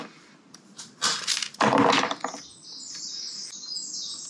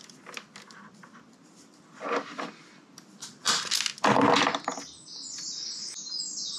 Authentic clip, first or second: second